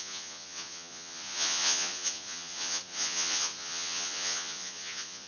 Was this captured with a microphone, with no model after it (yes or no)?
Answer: no